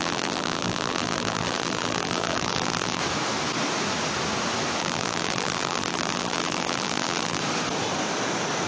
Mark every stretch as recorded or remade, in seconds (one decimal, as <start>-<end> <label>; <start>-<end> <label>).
0.0-3.0 remade; 3.0-4.8 recorded; 4.8-7.4 remade; 7.4-8.7 recorded